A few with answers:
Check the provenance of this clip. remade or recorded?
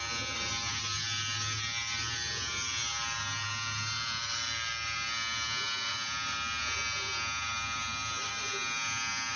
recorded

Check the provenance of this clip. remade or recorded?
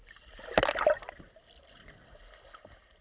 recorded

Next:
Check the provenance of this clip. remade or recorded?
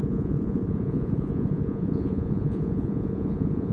remade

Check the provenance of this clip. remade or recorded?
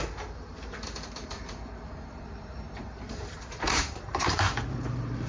remade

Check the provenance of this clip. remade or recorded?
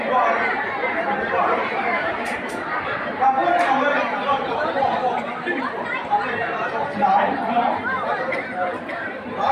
remade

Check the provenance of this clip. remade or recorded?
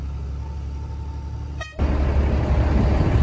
recorded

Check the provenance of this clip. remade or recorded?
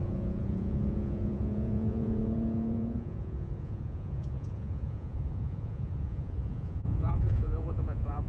remade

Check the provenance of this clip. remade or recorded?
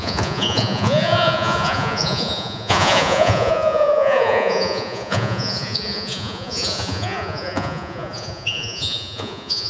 remade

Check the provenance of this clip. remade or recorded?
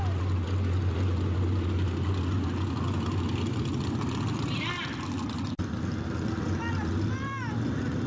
recorded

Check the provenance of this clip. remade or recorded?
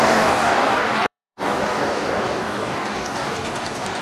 remade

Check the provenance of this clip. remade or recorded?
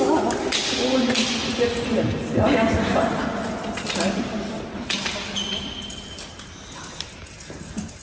recorded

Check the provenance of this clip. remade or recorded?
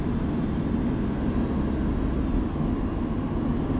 recorded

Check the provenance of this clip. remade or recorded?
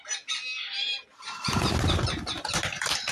recorded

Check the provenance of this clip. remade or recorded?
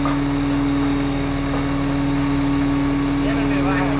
recorded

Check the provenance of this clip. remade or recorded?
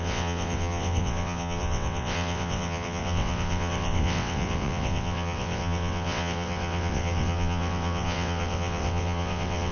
remade